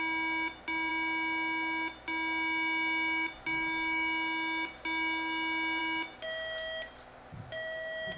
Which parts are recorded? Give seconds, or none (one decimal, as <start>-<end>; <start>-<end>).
0.0-8.2